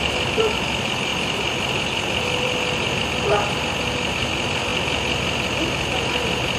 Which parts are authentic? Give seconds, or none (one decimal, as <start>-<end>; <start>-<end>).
0.0-6.6